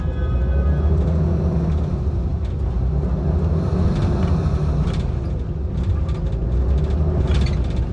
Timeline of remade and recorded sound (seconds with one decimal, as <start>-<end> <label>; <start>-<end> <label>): 0.0-7.9 recorded